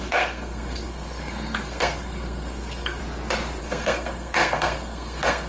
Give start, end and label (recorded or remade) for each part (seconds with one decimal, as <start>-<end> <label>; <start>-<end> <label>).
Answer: 0.0-3.0 remade; 3.0-3.6 recorded; 3.6-5.5 remade